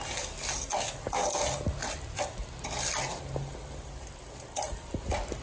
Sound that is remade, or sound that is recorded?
recorded